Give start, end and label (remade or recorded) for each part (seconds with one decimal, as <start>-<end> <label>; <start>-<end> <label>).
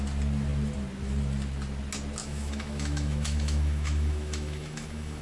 0.0-2.2 recorded; 2.2-5.2 remade